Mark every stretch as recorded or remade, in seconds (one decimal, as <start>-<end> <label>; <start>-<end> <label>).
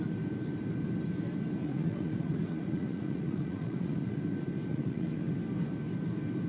0.0-1.6 recorded; 1.6-4.2 remade; 4.2-4.7 recorded; 4.7-5.3 remade; 5.3-6.5 recorded